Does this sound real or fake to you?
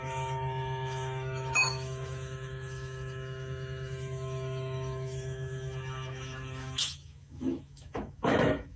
fake